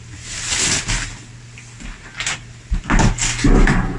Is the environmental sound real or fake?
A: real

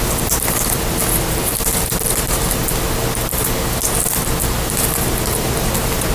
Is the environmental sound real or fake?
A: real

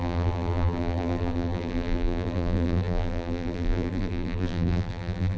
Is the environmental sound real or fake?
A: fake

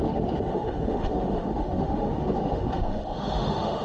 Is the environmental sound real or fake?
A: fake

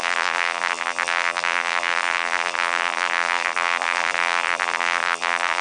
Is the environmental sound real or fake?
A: fake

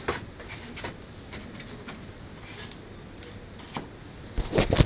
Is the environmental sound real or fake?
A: real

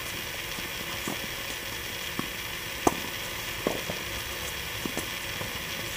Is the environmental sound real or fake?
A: real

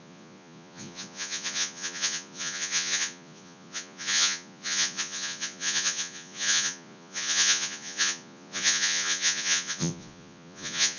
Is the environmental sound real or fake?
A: fake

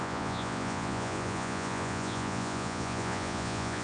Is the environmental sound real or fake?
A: fake